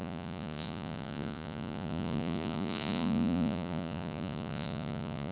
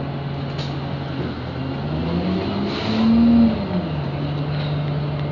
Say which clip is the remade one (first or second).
first